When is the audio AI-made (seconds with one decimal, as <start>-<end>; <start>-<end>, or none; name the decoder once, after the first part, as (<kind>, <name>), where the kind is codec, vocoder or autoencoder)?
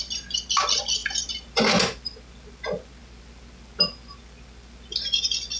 none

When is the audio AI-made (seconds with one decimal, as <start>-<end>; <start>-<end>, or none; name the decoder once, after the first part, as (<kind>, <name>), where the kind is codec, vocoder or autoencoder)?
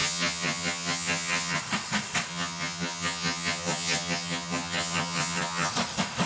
0.0-1.6 (vocoder, HiFi-GAN); 2.3-5.7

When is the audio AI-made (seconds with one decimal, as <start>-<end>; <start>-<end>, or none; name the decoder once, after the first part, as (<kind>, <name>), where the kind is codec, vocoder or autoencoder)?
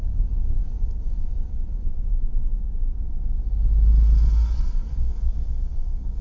4.9-6.2 (codec, SNAC)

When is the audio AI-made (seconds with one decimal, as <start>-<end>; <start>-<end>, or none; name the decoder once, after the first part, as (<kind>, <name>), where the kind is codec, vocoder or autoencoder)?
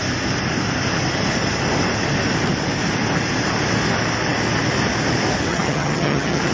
5.5-6.5 (vocoder, HiFi-GAN)